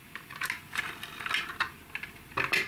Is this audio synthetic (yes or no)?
no